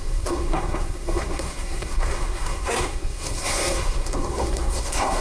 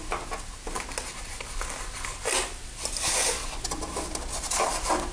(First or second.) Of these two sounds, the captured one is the second